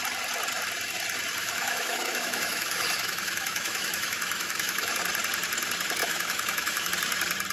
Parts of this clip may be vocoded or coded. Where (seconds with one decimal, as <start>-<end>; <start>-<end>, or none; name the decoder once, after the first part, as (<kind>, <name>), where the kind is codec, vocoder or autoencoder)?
1.4-4.9 (autoencoder, DAC-VAE); 6.0-6.9